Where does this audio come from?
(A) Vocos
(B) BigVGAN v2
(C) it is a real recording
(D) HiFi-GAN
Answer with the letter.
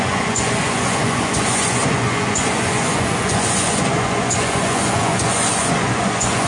A